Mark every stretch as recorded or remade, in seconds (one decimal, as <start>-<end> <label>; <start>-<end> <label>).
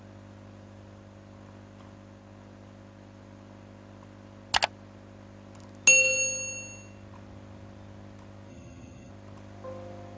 0.0-8.5 recorded; 8.5-9.1 remade; 9.1-10.2 recorded